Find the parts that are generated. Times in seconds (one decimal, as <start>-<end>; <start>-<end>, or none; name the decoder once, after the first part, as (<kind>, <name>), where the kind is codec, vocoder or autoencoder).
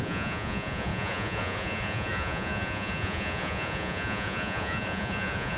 0.0-5.6 (vocoder, Vocos)